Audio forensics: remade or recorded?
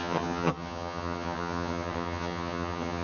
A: remade